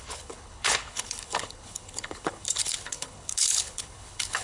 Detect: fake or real fake